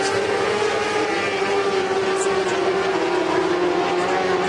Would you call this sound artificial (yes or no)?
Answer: no